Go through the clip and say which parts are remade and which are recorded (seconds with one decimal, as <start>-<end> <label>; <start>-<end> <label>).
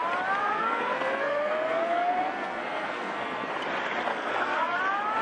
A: 0.0-0.4 recorded; 0.4-3.5 remade; 3.5-4.1 recorded; 4.1-4.8 remade; 4.8-5.2 recorded